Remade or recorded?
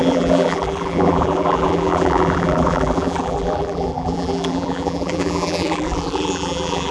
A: remade